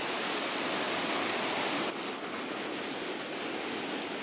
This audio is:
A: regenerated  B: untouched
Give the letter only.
B